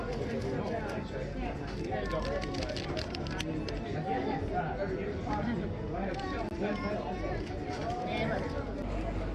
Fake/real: real